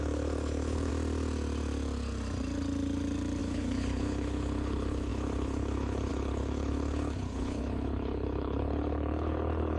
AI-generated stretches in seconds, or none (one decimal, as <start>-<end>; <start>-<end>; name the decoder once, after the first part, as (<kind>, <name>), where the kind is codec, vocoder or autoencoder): 0.0-0.9 (codec, HILCodec); 3.4-9.8